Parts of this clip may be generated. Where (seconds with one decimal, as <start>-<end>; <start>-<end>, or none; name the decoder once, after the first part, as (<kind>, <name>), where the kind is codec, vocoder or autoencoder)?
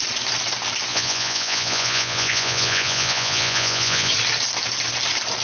0.9-4.1 (vocoder, Vocos)